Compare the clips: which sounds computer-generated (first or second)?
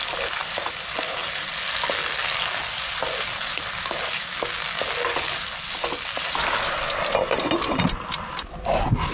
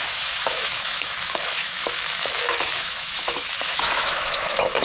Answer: second